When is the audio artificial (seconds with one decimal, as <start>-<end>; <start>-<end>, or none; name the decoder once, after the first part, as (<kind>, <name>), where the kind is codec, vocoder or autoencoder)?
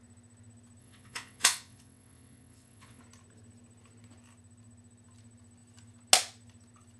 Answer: 0.8-3.0 (vocoder, WaveNeXt)